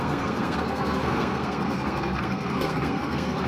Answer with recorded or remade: remade